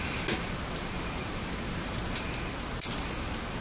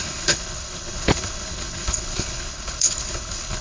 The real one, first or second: first